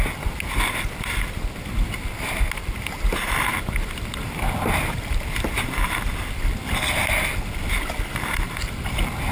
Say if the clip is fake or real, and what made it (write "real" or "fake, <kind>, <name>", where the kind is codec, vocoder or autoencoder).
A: real